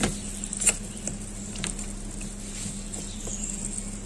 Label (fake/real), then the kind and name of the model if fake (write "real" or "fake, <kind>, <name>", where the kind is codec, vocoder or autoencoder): real